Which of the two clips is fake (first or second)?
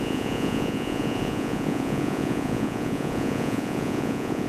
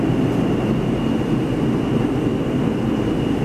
first